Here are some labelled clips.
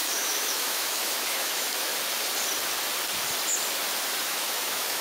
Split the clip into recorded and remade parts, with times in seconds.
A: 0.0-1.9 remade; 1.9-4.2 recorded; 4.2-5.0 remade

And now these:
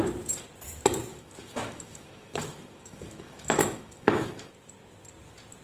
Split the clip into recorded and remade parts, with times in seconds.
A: 0.0-1.1 recorded; 1.1-4.5 remade; 4.5-5.6 recorded

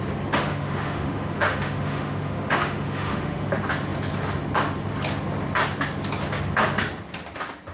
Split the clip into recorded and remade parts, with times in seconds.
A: 0.0-0.5 recorded; 0.5-3.5 remade; 3.5-7.7 recorded